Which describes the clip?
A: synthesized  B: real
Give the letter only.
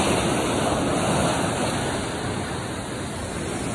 B